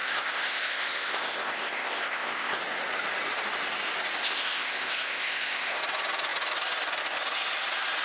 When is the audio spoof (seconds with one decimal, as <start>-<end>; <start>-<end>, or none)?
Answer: 0.0-2.6; 4.2-5.8